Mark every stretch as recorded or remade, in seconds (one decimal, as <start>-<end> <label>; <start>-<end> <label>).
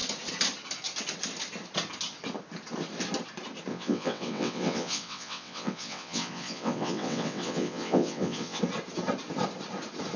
0.0-3.7 recorded; 3.7-8.6 remade; 8.6-10.2 recorded